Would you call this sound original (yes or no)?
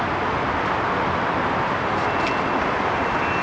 yes